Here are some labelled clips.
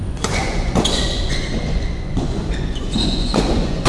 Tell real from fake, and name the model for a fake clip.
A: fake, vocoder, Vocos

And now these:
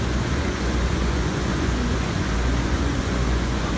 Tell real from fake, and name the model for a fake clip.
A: fake, vocoder, Vocos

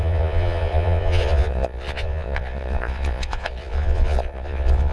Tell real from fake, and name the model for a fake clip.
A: fake, vocoder, Vocos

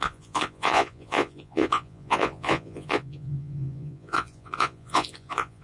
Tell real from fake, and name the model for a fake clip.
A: fake, vocoder, Vocos